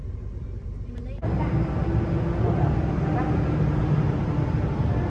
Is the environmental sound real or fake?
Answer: real